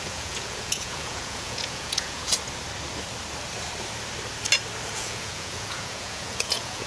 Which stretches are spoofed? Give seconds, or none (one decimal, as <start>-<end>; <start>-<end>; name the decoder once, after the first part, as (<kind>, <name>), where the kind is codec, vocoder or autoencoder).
0.0-2.3 (vocoder, Vocos); 4.9-6.9